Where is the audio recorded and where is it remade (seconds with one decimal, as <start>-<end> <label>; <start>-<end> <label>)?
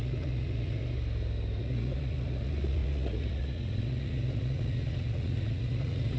0.0-0.8 remade; 0.8-1.6 recorded; 1.6-6.2 remade